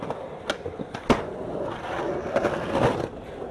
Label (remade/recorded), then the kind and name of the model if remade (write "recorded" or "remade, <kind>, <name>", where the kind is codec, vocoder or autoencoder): recorded